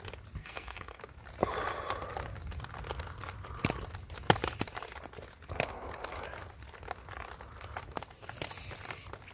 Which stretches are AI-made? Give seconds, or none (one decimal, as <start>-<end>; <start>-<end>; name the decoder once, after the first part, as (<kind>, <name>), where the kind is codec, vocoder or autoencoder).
0.4-1.0 (codec, SNAC)